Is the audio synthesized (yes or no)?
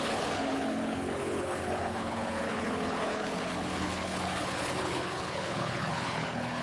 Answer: yes